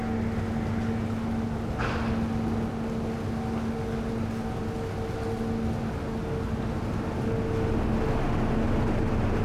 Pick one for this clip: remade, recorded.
recorded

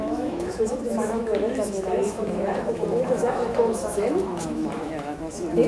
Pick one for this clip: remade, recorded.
remade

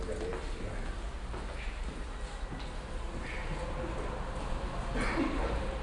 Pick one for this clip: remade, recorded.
recorded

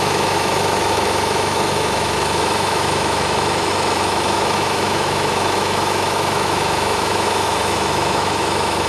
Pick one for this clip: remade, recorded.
remade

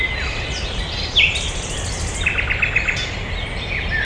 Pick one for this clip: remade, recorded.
recorded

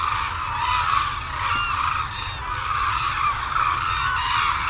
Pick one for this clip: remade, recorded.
recorded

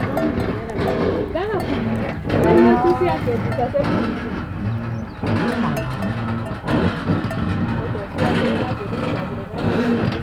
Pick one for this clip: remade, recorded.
recorded